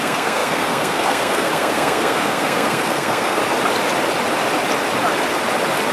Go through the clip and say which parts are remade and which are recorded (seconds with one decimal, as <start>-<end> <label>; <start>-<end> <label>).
0.0-3.4 remade; 3.4-5.9 recorded